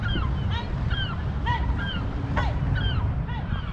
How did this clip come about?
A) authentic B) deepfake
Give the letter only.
B